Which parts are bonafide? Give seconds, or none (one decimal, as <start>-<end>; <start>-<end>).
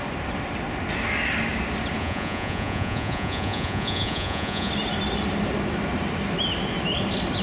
0.0-2.0; 4.7-7.4